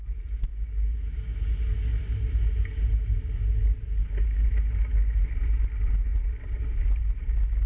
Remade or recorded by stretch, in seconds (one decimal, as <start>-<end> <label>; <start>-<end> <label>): 0.0-7.7 recorded